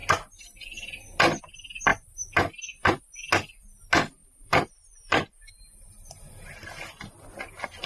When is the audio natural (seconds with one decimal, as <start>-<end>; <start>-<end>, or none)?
0.0-1.9; 3.0-4.2; 5.3-7.9